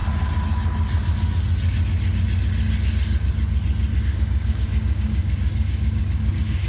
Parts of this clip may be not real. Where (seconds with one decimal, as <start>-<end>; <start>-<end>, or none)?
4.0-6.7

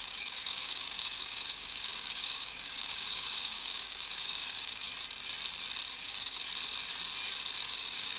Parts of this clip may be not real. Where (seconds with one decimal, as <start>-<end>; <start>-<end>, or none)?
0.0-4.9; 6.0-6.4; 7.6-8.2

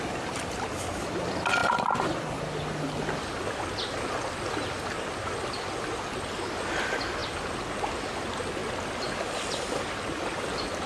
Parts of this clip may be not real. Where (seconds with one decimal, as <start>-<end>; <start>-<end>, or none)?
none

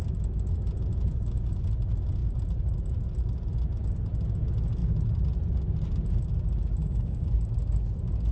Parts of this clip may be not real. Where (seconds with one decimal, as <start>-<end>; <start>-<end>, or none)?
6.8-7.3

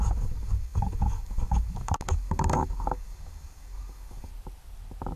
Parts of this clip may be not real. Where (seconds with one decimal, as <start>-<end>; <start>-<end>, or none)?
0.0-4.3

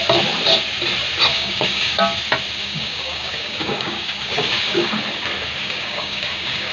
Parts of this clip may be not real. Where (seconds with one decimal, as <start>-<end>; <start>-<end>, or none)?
1.3-2.0; 2.6-4.9; 5.6-6.7